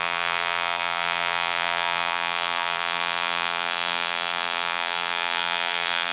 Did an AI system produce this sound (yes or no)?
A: yes